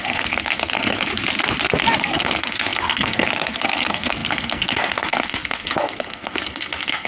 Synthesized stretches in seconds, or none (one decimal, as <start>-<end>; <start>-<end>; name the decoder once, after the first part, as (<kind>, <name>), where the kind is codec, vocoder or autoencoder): 0.0-1.1 (codec, SNAC); 2.0-7.1